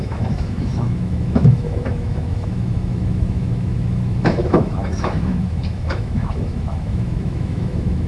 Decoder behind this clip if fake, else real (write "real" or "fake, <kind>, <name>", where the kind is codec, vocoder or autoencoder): fake, autoencoder, DAC-VAE